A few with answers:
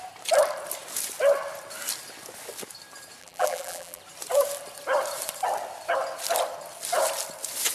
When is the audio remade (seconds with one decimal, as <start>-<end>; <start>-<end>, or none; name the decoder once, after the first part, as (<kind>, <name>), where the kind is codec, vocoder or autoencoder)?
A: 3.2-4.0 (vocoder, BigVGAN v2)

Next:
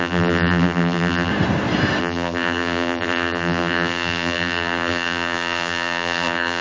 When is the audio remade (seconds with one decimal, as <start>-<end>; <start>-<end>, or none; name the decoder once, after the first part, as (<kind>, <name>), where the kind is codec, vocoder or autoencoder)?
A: 0.0-1.3 (vocoder, BigVGAN v2); 2.0-6.6

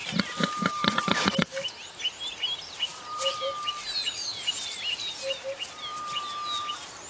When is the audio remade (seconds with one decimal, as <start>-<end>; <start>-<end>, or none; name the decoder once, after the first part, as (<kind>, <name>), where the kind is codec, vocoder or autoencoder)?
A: 2.9-4.9 (vocoder, BigVGAN v2)

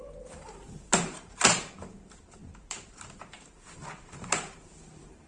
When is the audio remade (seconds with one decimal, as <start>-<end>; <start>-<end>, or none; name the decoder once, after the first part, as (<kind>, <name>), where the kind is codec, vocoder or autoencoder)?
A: 0.0-5.3 (vocoder, BigVGAN v2)

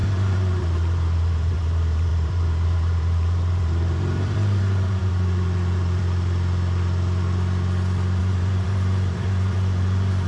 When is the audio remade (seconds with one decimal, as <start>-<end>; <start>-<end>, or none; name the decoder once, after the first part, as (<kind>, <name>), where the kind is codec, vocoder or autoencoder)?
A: 0.0-6.0 (vocoder, BigVGAN v2); 8.2-10.3